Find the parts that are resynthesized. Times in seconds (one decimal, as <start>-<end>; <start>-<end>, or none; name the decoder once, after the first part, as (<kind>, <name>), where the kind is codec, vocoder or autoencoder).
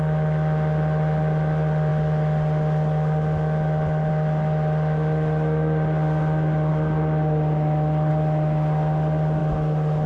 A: none